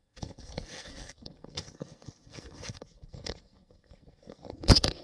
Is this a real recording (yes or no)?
no